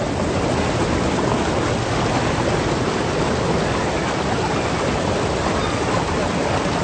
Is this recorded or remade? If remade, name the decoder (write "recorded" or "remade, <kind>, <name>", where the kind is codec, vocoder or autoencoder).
recorded